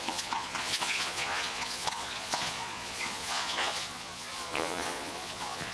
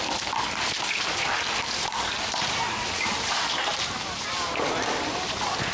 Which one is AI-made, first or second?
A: first